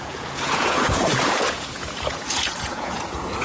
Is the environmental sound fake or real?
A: fake